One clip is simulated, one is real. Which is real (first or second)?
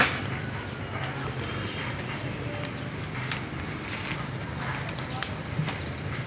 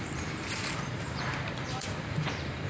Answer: first